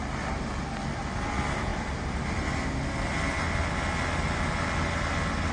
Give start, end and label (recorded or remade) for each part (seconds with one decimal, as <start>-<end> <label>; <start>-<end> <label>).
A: 0.0-5.5 recorded